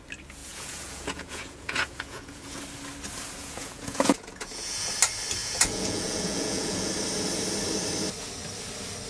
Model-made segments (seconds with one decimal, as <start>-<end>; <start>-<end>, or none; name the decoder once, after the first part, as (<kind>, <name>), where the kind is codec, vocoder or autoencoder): 0.4-2.6 (vocoder, Vocos); 3.4-4.9; 5.4-6.9